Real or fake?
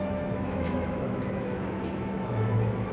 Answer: fake